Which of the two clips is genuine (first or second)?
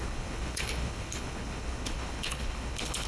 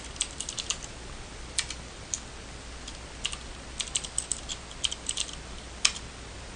second